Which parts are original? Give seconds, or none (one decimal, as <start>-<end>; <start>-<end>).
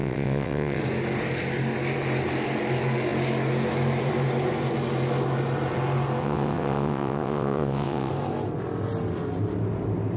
0.8-6.2; 8.1-10.2